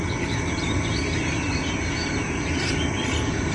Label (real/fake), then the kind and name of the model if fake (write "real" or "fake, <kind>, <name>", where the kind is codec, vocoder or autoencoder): real